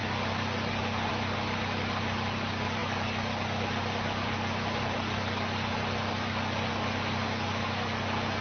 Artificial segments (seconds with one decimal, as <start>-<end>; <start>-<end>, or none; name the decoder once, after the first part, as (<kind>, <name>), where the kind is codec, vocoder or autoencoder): none